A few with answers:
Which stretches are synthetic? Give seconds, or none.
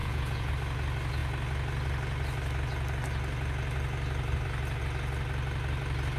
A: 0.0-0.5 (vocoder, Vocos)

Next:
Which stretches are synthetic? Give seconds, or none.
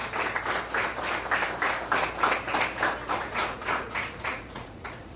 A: 3.1-5.2 (vocoder, Vocos)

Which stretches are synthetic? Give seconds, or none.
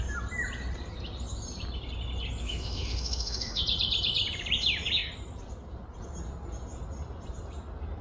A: 2.4-3.6 (autoencoder, DAC-VAE)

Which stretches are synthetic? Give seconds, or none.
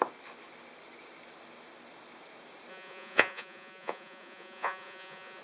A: 2.7-5.4 (vocoder, Vocos)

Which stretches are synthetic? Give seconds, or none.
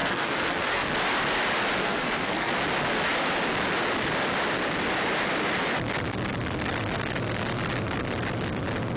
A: 0.0-0.9 (codec, SNAC); 1.8-2.5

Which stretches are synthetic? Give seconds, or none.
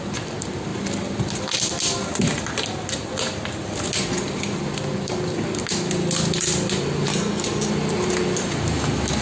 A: 7.1-7.7 (codec, DAC)